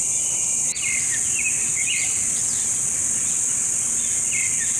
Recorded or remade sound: recorded